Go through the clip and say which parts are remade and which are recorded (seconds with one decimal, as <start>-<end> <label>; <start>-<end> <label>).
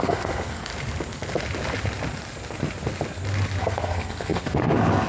0.0-0.7 remade; 0.7-3.6 recorded; 3.6-5.1 remade